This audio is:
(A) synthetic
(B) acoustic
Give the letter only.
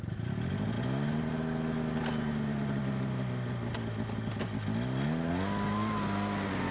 B